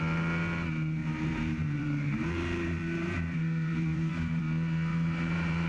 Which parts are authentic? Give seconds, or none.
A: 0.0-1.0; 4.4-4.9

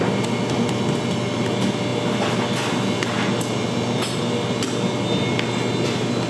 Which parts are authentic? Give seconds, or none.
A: 0.0-6.3

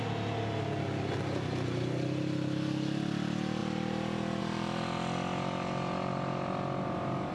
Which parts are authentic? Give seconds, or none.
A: 0.0-7.3

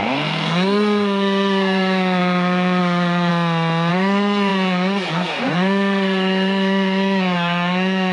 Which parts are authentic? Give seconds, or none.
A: 3.3-3.9

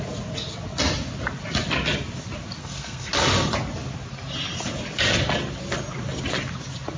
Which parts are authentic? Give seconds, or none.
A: 0.0-2.6; 3.1-7.0